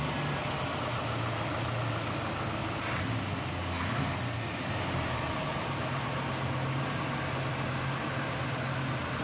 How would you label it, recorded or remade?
recorded